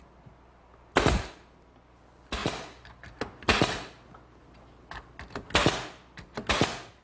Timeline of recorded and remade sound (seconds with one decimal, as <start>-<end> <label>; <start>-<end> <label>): 0.0-7.0 recorded